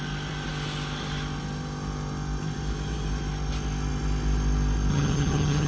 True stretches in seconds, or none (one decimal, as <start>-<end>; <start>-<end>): 0.0-4.9